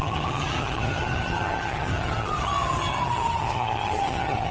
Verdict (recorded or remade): remade